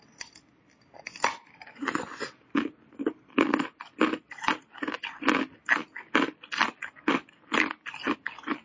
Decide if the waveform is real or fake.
real